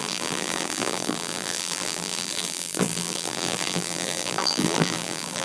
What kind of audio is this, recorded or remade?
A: remade